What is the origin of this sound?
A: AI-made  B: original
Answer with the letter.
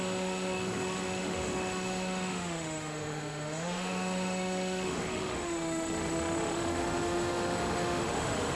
A